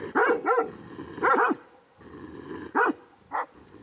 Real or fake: real